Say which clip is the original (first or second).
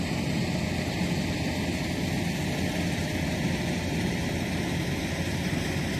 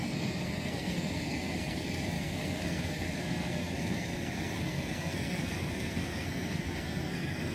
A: first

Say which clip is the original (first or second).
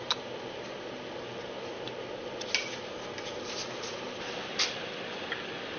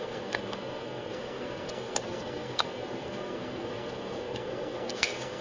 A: first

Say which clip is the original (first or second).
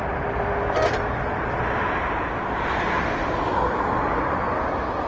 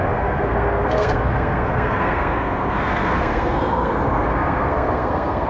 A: first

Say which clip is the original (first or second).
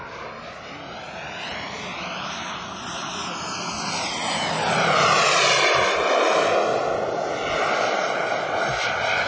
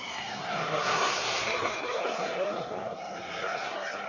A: first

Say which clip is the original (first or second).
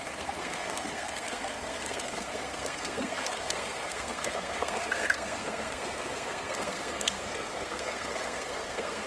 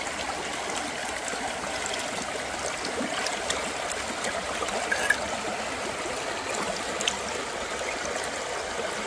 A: second